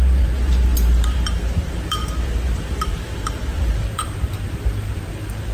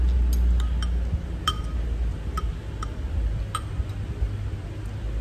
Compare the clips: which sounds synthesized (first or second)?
first